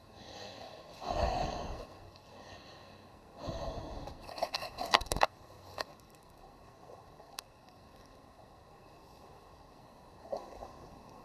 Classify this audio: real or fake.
fake